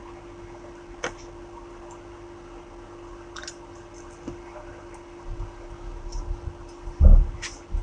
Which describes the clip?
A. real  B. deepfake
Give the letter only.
A